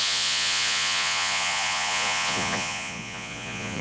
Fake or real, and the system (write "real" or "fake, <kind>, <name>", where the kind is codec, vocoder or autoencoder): fake, vocoder, Vocos